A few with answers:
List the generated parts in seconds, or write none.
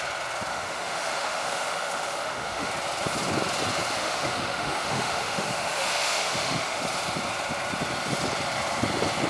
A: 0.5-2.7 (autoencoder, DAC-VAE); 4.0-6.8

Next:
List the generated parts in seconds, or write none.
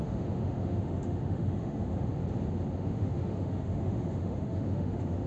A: 0.0-2.1 (autoencoder, DAC-VAE); 2.8-5.3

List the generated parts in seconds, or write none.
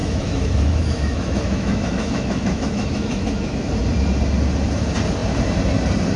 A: 0.0-3.7 (autoencoder, DAC-VAE)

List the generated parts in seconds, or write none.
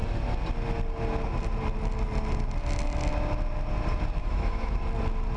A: 4.2-4.7 (autoencoder, DAC-VAE)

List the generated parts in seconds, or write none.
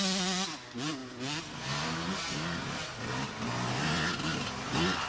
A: none